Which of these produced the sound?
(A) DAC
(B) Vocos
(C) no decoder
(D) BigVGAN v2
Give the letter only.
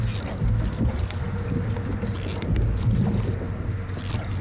C